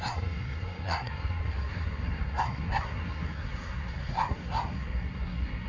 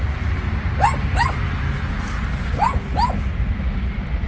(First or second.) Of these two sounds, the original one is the second